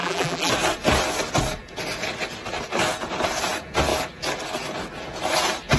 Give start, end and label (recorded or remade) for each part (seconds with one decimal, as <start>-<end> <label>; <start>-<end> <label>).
0.0-0.5 remade; 0.5-5.8 recorded